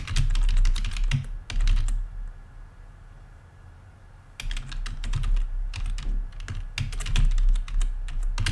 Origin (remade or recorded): recorded